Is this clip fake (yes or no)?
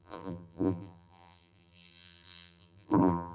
yes